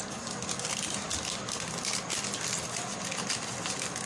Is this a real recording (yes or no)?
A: yes